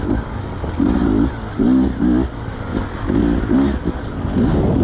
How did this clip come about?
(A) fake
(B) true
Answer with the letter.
B